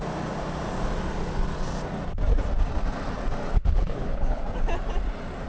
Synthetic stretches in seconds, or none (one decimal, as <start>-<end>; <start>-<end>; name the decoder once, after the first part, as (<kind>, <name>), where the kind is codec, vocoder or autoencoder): 3.5-4.4 (codec, HILCodec)